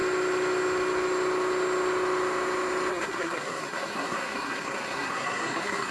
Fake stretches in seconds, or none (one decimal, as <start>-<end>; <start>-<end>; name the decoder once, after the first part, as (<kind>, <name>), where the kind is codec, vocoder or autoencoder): 2.9-5.9 (codec, SNAC)

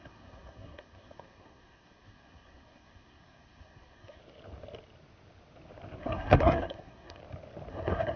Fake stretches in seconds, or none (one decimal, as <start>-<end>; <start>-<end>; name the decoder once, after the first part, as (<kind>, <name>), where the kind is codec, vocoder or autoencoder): 0.0-4.2 (codec, SNAC); 6.0-7.2; 7.7-8.2

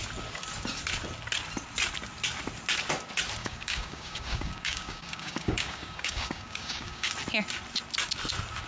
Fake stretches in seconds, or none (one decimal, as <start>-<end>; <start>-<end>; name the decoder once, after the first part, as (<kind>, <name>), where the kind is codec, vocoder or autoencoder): 3.4-7.1 (codec, DAC)

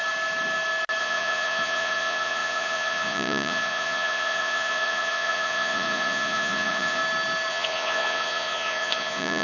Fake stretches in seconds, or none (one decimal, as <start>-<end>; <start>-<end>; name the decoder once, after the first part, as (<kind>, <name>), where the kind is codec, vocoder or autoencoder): 1.0-7.0 (vocoder, Vocos); 7.5-9.4

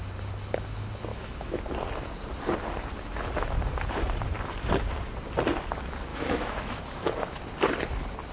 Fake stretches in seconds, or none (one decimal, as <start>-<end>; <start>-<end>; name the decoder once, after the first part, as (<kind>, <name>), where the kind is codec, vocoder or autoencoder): 1.1-1.6 (autoencoder, DAC-VAE); 6.1-6.8

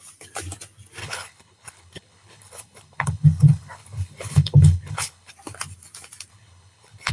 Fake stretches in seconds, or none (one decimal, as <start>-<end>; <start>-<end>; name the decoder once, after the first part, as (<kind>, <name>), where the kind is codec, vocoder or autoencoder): 1.0-5.3 (codec, HILCodec); 6.3-7.1

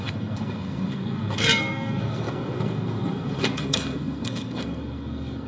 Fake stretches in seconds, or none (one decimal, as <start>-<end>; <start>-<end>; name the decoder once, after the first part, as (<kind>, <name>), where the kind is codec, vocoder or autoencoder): 0.0-5.5 (codec, SNAC)